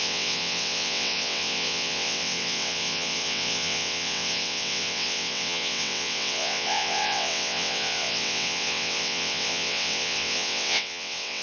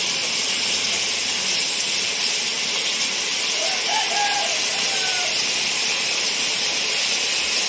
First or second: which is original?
second